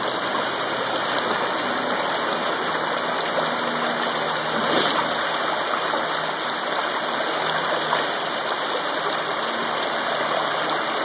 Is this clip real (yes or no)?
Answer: yes